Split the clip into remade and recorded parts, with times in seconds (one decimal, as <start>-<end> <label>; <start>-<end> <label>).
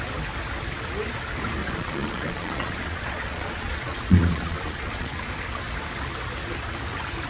0.0-1.6 recorded; 1.6-5.3 remade; 5.3-7.3 recorded